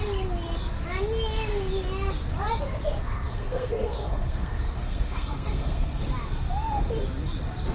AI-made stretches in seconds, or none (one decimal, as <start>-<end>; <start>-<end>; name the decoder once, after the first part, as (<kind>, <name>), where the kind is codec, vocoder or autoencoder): 3.3-6.0 (codec, SNAC)